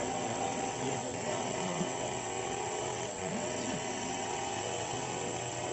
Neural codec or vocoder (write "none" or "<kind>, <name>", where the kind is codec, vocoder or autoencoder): vocoder, WaveNeXt